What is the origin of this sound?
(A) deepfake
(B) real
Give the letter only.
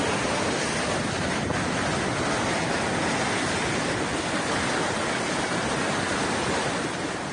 B